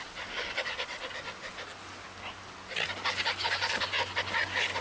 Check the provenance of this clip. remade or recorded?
recorded